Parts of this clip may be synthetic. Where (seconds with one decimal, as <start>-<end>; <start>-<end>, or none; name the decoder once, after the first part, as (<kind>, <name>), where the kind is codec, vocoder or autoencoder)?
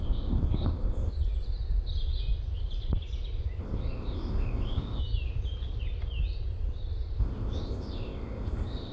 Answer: 0.0-1.1 (codec, ZipCodec); 3.6-5.0; 7.2-8.9